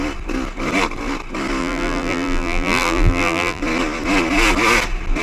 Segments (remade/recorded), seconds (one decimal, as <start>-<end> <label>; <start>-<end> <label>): 0.0-1.6 recorded; 1.6-3.6 remade; 3.6-5.2 recorded